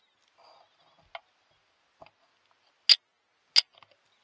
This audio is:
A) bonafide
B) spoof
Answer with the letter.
A